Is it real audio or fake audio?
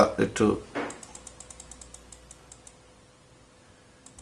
real